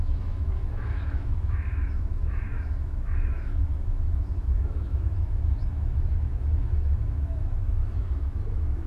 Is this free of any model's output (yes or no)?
no